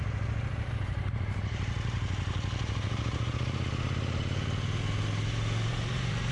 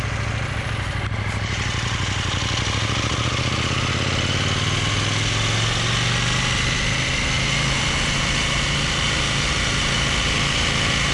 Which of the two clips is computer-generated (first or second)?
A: first